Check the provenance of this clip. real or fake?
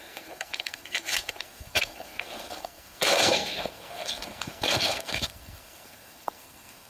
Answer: fake